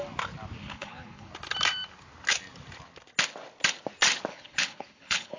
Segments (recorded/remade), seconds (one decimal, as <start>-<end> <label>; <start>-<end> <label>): 0.0-0.6 recorded; 0.6-1.3 remade; 1.3-4.3 recorded; 4.3-5.4 remade